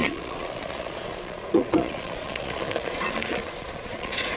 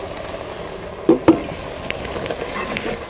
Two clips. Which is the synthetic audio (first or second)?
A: first